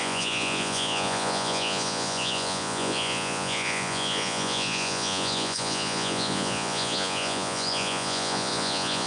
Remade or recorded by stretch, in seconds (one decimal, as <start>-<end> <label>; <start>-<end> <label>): 0.0-9.1 remade